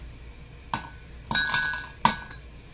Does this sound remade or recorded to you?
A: recorded